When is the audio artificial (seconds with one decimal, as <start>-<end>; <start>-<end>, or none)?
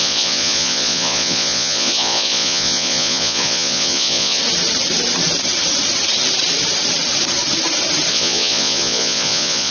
0.0-4.4; 8.1-9.7